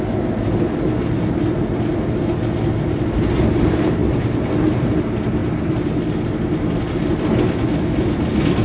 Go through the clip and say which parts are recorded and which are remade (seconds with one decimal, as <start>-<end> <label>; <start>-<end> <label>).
0.0-4.0 recorded; 4.0-4.9 remade; 4.9-5.4 recorded; 5.4-6.0 remade; 6.0-8.6 recorded